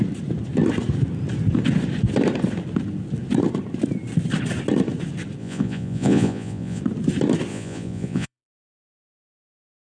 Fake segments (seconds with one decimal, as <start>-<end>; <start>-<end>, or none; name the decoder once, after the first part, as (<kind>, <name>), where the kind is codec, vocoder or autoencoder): 5.4-6.8 (vocoder, Vocos); 7.5-9.0